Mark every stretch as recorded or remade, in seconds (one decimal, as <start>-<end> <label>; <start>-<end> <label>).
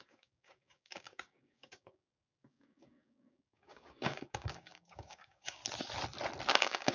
0.0-5.6 remade; 5.6-6.5 recorded; 6.5-6.9 remade